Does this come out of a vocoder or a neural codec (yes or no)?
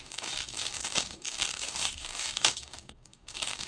yes